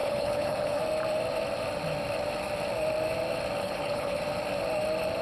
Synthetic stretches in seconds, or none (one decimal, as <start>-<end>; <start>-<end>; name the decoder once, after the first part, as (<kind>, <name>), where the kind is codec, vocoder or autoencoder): 0.0-0.8 (codec, HILCodec); 3.6-4.2